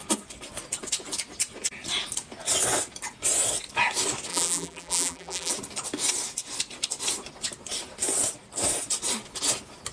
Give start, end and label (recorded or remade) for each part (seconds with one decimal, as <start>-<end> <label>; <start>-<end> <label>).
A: 0.0-4.3 recorded; 4.3-5.5 remade; 5.5-9.9 recorded